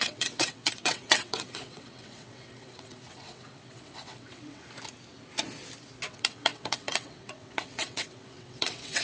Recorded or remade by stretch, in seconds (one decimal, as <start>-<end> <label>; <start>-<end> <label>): 0.0-4.6 remade; 4.6-6.1 recorded; 6.1-9.0 remade